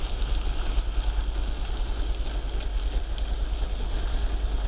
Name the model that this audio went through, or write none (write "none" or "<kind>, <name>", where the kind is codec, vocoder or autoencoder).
none